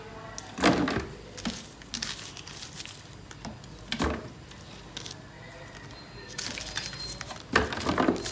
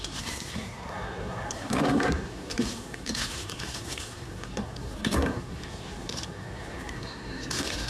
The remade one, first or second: second